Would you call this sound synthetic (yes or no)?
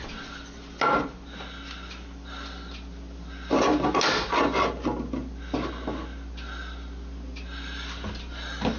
no